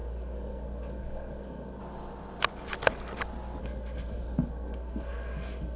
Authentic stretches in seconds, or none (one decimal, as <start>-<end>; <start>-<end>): 1.8-3.6